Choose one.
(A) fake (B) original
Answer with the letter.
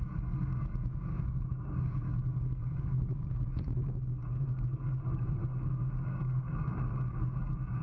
A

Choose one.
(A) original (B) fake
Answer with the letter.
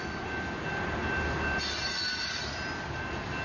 A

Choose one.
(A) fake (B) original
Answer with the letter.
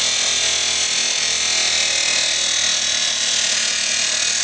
B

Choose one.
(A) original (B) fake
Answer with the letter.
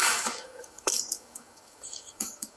B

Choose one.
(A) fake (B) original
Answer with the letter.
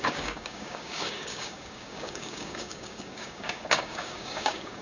A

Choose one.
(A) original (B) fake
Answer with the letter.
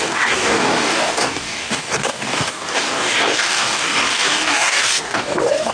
B